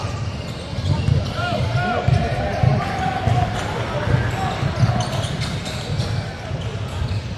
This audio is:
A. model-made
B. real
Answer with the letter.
B